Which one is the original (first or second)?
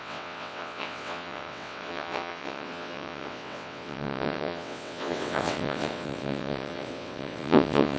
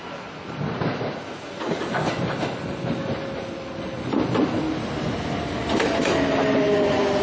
second